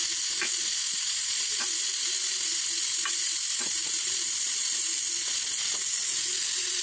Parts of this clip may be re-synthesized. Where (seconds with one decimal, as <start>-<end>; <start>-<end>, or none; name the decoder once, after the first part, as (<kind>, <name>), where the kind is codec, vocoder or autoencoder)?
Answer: none